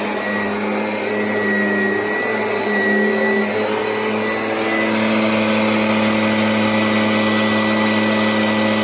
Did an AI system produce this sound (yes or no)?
no